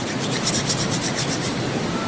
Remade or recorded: recorded